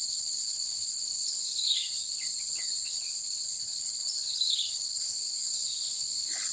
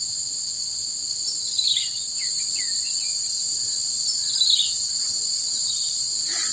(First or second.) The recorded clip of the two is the second